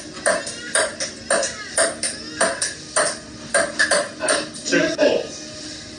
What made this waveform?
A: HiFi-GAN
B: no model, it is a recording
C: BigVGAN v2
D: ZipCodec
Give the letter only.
B